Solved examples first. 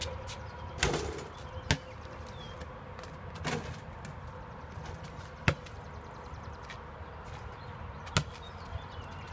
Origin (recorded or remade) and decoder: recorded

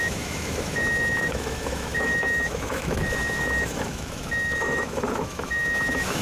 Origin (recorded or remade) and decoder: remade, autoencoder, DAC-VAE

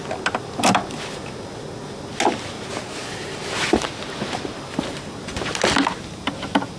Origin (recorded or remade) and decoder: recorded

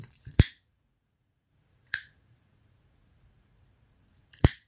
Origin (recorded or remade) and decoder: remade, vocoder, Vocos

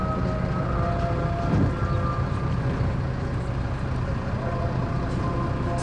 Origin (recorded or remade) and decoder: recorded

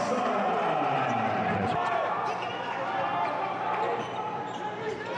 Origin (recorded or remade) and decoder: recorded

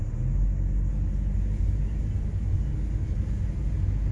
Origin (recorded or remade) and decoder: recorded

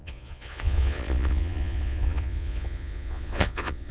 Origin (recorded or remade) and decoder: remade, vocoder, Vocos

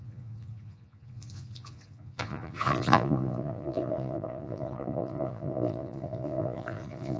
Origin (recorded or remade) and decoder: remade, vocoder, Vocos